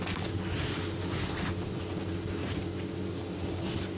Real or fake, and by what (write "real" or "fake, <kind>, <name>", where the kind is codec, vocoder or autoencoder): real